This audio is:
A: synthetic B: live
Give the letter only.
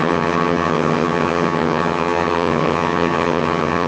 A